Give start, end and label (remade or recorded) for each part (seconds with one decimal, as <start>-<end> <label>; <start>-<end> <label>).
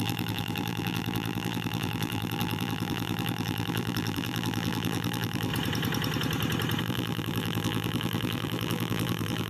0.0-5.5 remade; 5.5-6.8 recorded; 6.8-9.5 remade